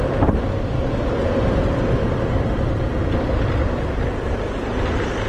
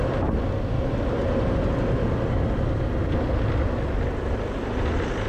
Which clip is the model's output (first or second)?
first